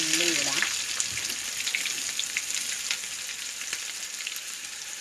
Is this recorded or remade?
recorded